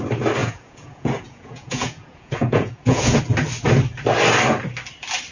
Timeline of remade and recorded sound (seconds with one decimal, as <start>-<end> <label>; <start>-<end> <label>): 0.0-0.4 recorded; 0.4-3.2 remade; 3.2-5.3 recorded